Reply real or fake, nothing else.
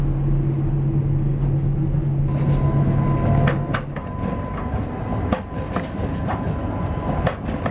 real